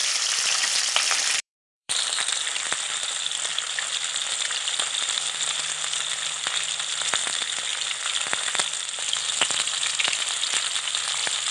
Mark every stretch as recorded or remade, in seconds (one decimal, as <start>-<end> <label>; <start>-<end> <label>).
0.0-3.7 remade; 3.7-11.5 recorded